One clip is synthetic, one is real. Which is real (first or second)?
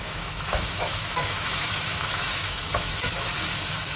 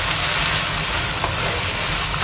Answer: second